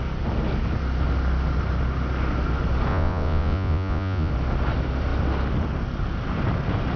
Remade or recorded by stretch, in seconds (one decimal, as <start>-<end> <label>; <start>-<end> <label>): 0.0-2.9 recorded; 2.9-4.3 remade; 4.3-7.0 recorded